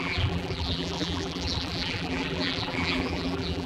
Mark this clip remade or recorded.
remade